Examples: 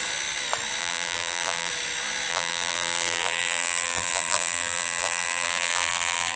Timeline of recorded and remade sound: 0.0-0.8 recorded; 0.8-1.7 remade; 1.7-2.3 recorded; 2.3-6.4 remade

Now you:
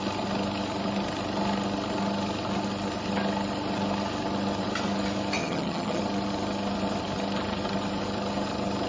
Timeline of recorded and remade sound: 0.0-5.4 recorded; 5.4-6.0 remade; 6.0-8.9 recorded

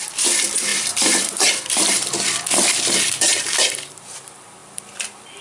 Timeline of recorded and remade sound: 0.0-0.7 recorded; 0.7-3.9 remade; 3.9-4.6 recorded; 4.6-5.4 remade

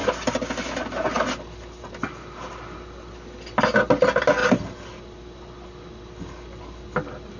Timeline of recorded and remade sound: 0.0-7.4 recorded

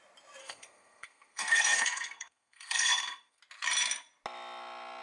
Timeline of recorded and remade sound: 0.0-0.4 recorded; 0.4-3.4 remade; 3.4-5.0 recorded

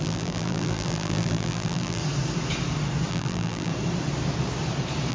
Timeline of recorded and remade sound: 0.0-2.0 remade; 2.0-3.1 recorded; 3.1-3.7 remade; 3.7-5.1 recorded

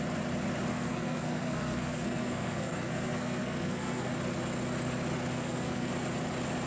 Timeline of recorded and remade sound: 0.0-0.7 recorded; 0.7-4.1 remade; 4.1-5.3 recorded; 5.3-5.9 remade; 5.9-6.7 recorded

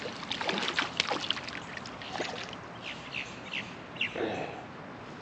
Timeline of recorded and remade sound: 0.0-5.2 recorded